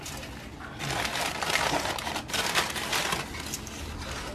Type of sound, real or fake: real